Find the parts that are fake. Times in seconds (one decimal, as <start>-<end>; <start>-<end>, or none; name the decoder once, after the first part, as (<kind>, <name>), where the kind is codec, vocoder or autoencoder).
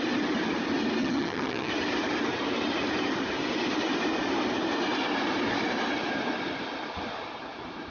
1.0-1.7 (vocoder, HiFi-GAN)